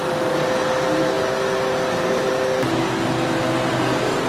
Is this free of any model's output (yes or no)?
yes